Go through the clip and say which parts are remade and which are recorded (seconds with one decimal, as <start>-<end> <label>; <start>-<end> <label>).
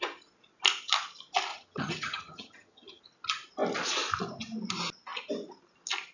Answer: 0.0-1.5 recorded; 1.5-3.0 remade; 3.0-6.1 recorded